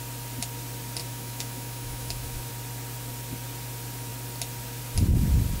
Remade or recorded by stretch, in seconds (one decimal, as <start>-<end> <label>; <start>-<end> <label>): 0.0-1.0 recorded; 1.0-2.5 remade; 2.5-5.6 recorded